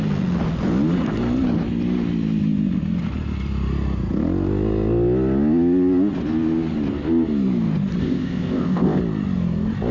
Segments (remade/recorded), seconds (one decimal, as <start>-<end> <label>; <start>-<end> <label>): 0.0-8.0 recorded; 8.0-9.0 remade; 9.0-9.9 recorded